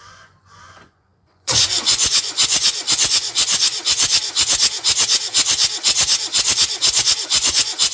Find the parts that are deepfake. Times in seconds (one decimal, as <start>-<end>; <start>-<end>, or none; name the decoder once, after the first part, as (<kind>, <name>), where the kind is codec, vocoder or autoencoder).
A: 0.0-4.1 (vocoder, Vocos); 7.0-7.9